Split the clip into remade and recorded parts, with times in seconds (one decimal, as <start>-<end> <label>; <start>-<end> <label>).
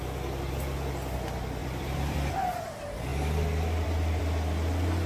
0.0-1.6 recorded; 1.6-2.3 remade; 2.3-3.1 recorded; 3.1-4.2 remade; 4.2-5.1 recorded